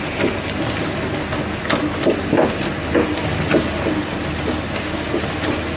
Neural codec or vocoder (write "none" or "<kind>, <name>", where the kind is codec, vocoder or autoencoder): none